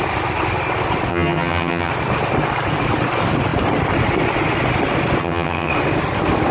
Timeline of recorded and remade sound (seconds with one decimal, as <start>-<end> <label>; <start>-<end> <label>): 0.0-1.1 recorded; 1.1-1.9 remade; 1.9-5.2 recorded; 5.2-5.7 remade; 5.7-6.5 recorded